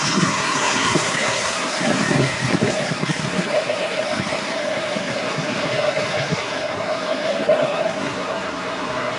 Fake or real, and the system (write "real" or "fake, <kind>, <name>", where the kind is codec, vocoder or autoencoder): fake, codec, SNAC